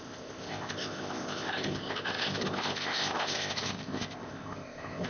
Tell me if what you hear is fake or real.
fake